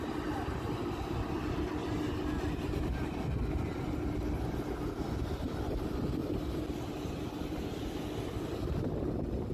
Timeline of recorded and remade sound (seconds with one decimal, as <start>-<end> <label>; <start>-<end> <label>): 0.0-9.5 recorded

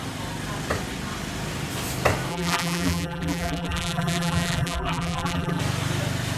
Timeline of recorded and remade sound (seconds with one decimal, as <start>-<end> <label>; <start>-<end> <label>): 0.0-2.3 recorded; 2.3-5.6 remade; 5.6-6.4 recorded

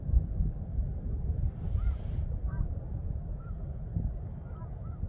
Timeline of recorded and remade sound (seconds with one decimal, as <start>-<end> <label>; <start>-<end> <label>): 0.0-3.0 recorded; 3.0-3.9 remade; 3.9-5.1 recorded